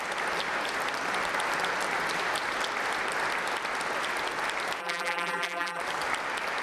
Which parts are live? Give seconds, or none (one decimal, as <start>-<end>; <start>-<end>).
0.0-4.8; 5.8-6.6